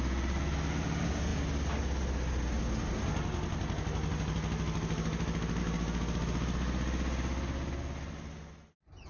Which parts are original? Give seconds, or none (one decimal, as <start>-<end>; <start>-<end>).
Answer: 0.0-9.1